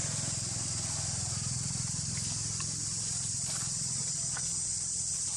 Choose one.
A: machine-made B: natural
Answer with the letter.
B